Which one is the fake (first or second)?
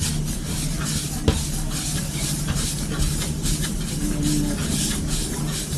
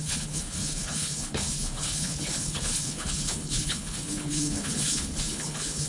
second